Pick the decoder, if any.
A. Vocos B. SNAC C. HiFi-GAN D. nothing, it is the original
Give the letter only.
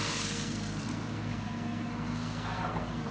B